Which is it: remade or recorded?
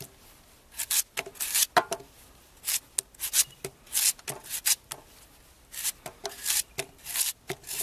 recorded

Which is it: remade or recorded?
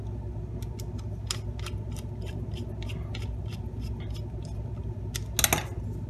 recorded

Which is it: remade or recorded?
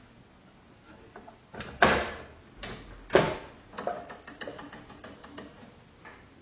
recorded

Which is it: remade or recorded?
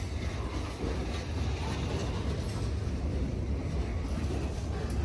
recorded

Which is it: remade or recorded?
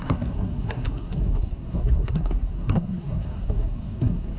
remade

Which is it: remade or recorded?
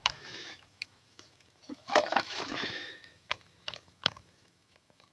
remade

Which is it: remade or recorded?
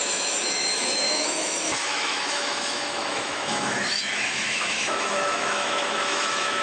remade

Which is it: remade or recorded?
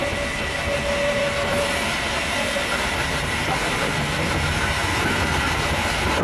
remade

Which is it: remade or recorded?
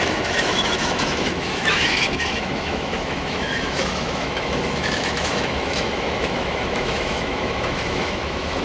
remade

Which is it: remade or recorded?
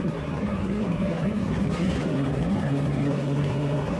remade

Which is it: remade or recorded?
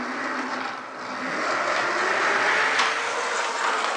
recorded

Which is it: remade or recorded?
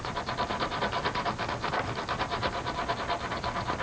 recorded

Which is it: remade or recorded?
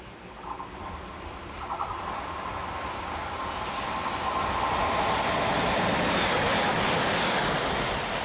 recorded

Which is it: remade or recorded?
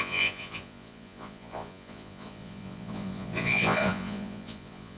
remade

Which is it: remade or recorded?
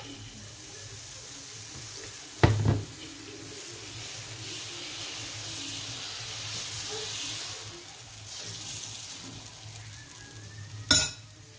recorded